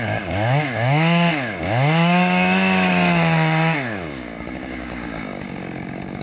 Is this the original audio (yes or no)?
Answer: no